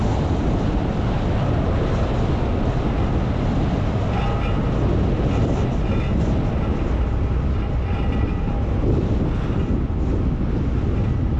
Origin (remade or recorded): recorded